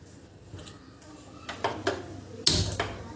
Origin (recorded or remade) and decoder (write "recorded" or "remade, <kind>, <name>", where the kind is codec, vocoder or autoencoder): recorded